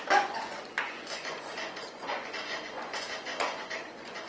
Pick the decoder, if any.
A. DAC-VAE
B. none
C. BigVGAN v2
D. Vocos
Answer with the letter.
D